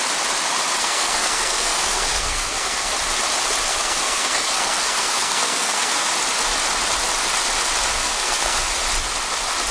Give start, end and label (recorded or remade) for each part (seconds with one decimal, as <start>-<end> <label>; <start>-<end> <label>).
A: 0.0-0.8 recorded; 0.8-2.9 remade; 2.9-3.7 recorded; 3.7-6.1 remade; 6.1-7.9 recorded; 7.9-8.8 remade; 8.8-9.7 recorded